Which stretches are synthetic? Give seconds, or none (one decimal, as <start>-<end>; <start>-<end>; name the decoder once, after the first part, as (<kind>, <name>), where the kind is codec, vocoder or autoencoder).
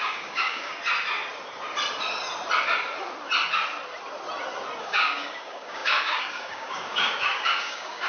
0.0-0.7 (codec, DAC); 4.8-8.1